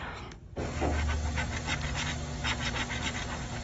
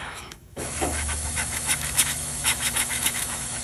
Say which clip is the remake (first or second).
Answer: second